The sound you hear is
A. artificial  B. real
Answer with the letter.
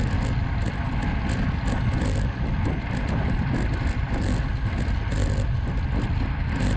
B